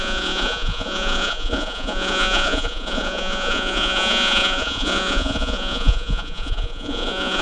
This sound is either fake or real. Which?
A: fake